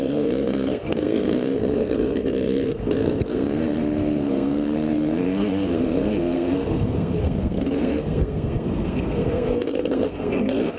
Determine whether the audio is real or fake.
fake